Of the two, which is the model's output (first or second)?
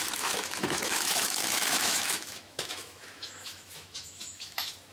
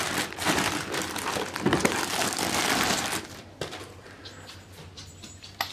first